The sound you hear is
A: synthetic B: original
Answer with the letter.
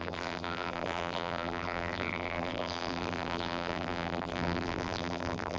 A